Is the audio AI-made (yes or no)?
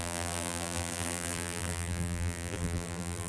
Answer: yes